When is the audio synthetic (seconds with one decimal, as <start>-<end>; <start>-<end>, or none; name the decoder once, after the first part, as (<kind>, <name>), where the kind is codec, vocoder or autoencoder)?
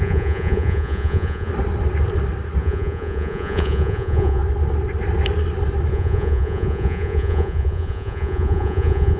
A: 0.0-1.5 (vocoder, Vocos); 2.6-4.4; 5.9-9.2